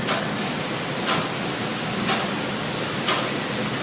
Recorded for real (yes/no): yes